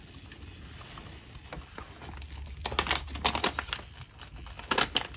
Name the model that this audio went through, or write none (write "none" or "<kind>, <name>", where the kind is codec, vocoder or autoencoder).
none